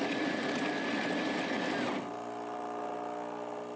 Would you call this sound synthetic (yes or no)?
no